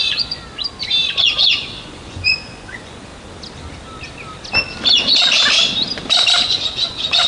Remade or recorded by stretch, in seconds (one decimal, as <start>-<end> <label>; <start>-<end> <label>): 0.0-0.4 remade; 0.4-1.2 recorded; 1.2-3.1 remade; 3.1-6.5 recorded; 6.5-7.3 remade